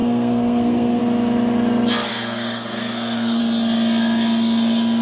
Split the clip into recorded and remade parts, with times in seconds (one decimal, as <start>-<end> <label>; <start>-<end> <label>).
0.0-1.0 remade; 1.0-2.1 recorded; 2.1-3.4 remade; 3.4-5.0 recorded